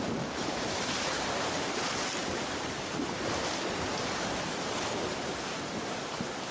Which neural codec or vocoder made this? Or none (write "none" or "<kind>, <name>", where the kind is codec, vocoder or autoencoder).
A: vocoder, BigVGAN v2